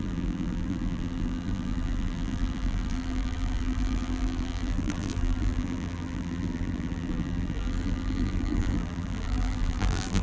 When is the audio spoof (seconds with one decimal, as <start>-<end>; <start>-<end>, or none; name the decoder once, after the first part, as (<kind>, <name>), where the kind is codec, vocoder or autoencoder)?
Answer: 0.0-10.2 (vocoder, BigVGAN v2)